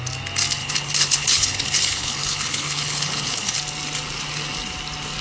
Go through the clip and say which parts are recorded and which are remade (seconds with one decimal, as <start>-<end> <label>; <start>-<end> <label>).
0.0-0.6 recorded; 0.6-3.6 remade; 3.6-5.2 recorded